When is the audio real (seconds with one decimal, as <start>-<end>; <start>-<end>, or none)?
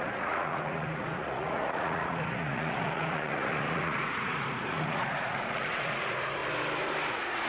6.4-7.1